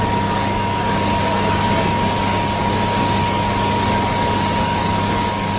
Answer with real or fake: fake